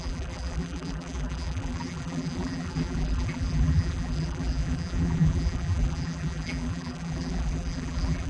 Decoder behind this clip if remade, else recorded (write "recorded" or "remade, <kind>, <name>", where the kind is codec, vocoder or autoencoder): remade, vocoder, BigVGAN v2